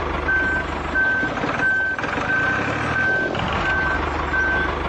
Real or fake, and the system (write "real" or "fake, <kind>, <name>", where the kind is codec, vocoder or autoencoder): real